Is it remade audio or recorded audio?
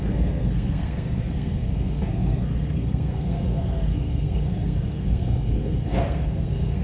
remade